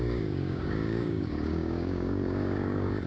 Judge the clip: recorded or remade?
remade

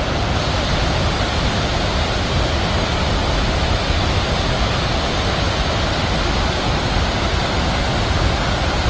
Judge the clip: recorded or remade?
recorded